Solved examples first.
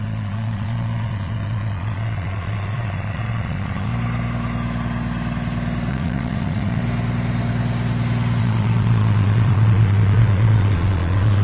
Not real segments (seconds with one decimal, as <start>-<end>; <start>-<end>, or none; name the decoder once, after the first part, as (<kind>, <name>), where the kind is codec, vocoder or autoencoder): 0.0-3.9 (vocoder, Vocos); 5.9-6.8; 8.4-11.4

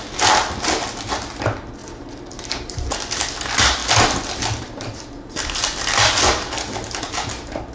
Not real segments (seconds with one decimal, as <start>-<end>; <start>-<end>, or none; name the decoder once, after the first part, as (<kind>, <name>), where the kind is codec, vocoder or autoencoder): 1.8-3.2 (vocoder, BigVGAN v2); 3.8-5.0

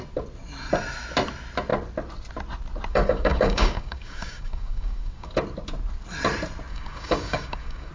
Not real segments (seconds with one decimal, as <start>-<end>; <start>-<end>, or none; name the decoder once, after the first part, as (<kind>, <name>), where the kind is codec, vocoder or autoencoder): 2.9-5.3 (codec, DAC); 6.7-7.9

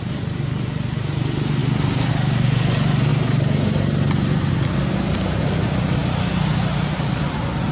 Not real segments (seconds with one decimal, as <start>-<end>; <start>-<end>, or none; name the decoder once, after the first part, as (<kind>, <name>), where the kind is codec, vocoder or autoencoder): none

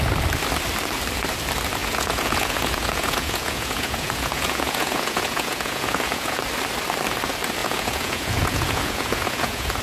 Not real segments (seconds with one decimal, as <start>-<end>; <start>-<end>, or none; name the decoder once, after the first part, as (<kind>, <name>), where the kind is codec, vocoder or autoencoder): 1.8-6.4 (vocoder, Vocos); 7.6-9.8